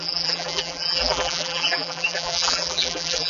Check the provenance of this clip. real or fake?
fake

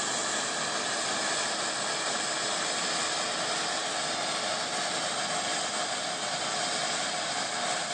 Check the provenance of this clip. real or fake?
real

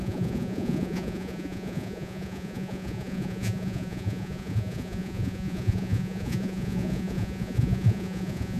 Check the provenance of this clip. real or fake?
fake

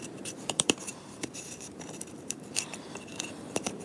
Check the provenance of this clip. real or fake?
fake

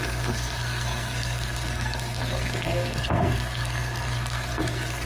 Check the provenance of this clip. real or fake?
fake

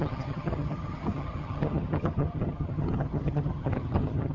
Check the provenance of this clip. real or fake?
fake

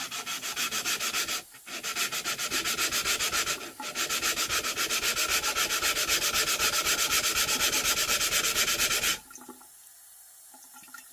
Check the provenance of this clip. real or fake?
real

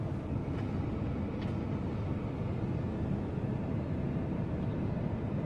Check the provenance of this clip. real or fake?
real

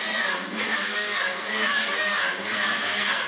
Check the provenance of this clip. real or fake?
fake